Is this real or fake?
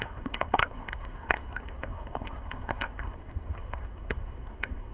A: fake